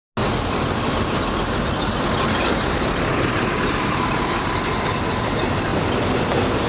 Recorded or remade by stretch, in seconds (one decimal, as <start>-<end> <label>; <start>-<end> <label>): 0.0-3.1 recorded; 3.1-4.1 remade; 4.1-6.7 recorded